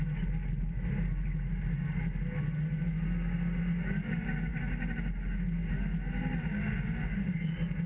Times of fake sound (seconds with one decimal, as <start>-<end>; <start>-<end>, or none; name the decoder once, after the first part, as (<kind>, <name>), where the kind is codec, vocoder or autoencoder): none